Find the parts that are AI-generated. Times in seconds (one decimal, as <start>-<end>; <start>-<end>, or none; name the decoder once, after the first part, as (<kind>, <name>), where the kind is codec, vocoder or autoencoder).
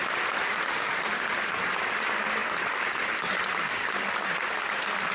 none